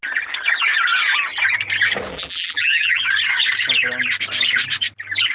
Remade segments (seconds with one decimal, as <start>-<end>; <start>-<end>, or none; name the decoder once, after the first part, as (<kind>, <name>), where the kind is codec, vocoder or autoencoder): 2.1-3.0 (vocoder, BigVGAN v2)